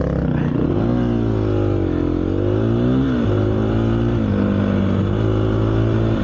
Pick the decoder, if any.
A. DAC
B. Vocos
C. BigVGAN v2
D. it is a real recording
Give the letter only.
D